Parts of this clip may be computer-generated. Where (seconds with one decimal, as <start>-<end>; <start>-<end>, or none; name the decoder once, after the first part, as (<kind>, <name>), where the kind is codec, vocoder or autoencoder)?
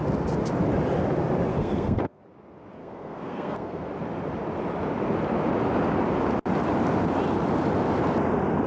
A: 1.5-2.2 (codec, SNAC); 2.8-3.9